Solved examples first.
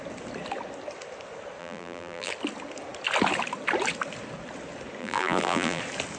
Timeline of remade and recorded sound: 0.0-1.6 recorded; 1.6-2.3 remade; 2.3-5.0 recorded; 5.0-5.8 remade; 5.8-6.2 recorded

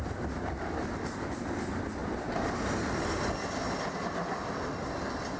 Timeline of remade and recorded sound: 0.0-1.4 remade; 1.4-5.4 recorded

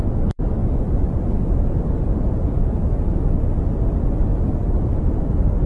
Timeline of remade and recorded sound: 0.0-5.7 recorded

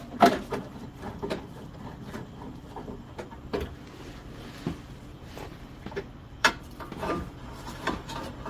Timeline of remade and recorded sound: 0.0-0.8 recorded; 0.8-1.5 remade; 1.5-5.1 recorded; 5.1-6.5 remade; 6.5-8.5 recorded

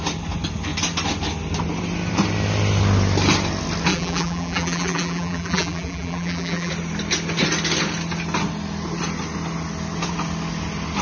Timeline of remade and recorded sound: 0.0-3.9 recorded; 3.9-6.7 remade; 6.7-11.0 recorded

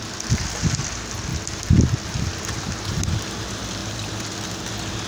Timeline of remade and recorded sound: 0.0-5.1 recorded

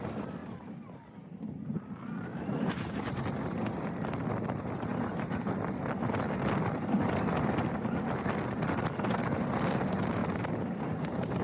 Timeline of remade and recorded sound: 0.0-2.3 recorded; 2.3-3.1 remade; 3.1-4.9 recorded; 4.9-5.6 remade; 5.6-10.2 recorded; 10.2-11.4 remade